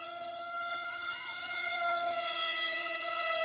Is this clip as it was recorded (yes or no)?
no